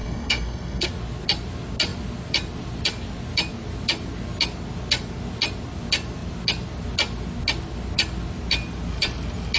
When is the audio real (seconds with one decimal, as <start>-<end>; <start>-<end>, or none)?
0.9-9.6